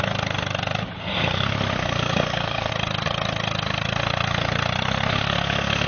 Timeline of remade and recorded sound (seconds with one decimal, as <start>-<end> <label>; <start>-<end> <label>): 0.0-1.0 recorded; 1.0-2.7 remade; 2.7-5.1 recorded; 5.1-5.9 remade

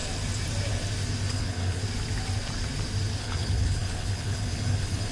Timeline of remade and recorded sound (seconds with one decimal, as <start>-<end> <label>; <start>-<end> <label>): 0.0-1.3 recorded; 1.3-1.8 remade; 1.8-3.2 recorded; 3.2-5.1 remade